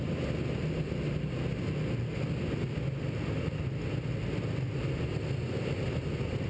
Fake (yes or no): no